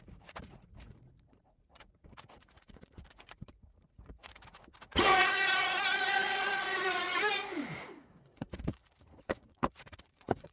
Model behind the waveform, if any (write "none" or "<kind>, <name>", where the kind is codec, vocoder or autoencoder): vocoder, Vocos